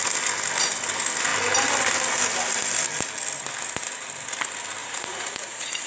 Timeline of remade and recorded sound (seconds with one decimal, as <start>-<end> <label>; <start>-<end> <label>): 0.0-4.8 recorded; 4.8-5.9 remade